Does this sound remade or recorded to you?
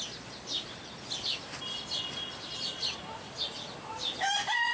recorded